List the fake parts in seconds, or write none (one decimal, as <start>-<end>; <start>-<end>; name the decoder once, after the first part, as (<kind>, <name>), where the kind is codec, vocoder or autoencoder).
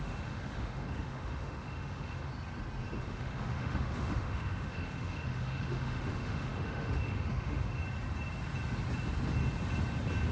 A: 0.0-2.3 (autoencoder, DAC-VAE); 3.0-7.8